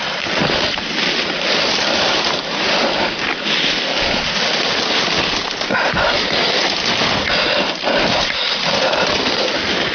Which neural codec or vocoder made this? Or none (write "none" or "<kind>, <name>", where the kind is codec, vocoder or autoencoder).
none